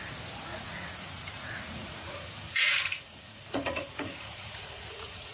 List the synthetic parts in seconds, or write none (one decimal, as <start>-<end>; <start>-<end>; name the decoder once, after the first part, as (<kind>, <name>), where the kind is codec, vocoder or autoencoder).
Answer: 0.0-5.3 (vocoder, Vocos)